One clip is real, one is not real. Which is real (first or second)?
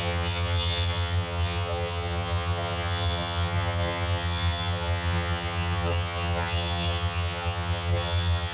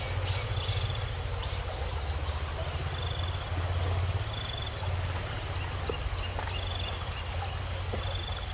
second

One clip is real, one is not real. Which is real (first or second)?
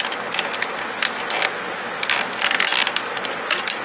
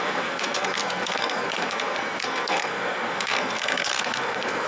first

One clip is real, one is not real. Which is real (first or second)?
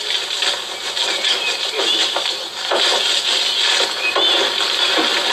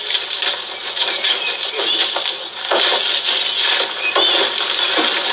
first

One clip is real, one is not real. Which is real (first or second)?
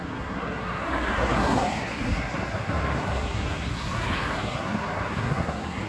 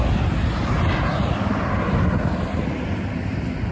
second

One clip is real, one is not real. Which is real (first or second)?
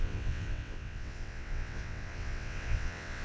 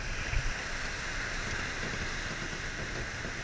second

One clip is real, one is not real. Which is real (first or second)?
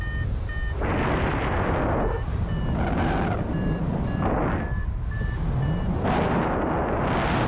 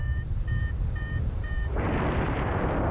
first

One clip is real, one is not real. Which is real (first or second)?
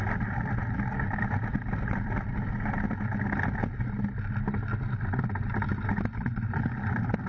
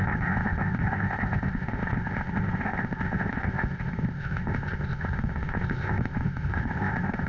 first